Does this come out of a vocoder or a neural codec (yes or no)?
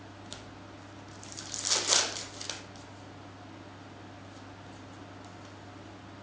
no